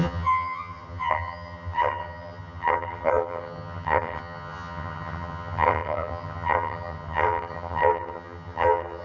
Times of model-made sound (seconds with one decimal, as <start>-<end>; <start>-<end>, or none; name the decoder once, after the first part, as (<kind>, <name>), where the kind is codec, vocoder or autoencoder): 0.0-9.0 (vocoder, HiFi-GAN)